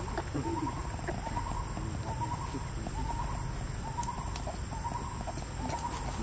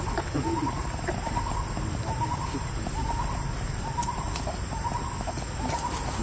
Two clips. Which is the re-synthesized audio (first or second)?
second